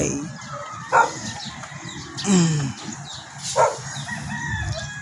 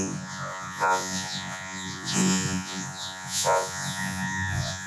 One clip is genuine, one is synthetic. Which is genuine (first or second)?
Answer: first